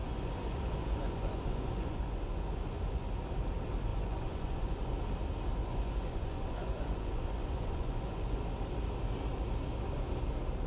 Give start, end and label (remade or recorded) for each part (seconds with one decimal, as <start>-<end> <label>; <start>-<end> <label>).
0.0-3.1 remade; 3.1-3.9 recorded; 3.9-4.9 remade; 4.9-5.6 recorded; 5.6-8.4 remade; 8.4-10.7 recorded